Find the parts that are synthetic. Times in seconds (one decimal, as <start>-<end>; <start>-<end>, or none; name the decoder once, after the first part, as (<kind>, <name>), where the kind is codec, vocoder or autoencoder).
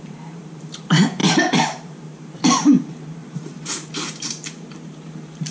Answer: 0.0-5.5 (vocoder, BigVGAN v2)